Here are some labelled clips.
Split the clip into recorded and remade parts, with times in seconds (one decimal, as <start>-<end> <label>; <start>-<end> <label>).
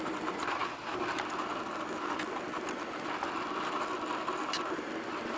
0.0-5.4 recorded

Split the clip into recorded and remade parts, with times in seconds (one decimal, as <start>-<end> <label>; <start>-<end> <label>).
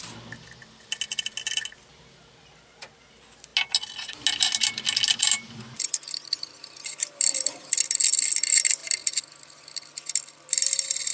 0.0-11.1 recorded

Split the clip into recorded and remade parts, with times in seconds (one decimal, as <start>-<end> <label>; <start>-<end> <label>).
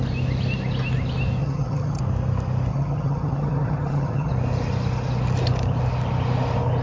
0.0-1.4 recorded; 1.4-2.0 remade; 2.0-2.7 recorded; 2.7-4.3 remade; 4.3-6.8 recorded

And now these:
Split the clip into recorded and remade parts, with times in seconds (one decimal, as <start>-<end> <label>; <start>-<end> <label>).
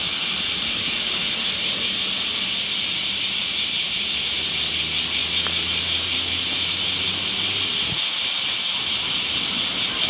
0.0-2.3 recorded; 2.3-3.3 remade; 3.3-7.7 recorded; 7.7-8.6 remade; 8.6-10.1 recorded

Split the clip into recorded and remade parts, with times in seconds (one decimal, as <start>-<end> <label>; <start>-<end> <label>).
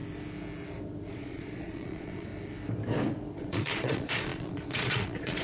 0.0-1.1 recorded; 1.1-2.3 remade; 2.3-3.4 recorded; 3.4-5.4 remade